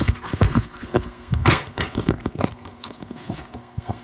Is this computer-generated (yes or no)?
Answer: yes